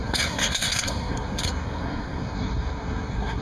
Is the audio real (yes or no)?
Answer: no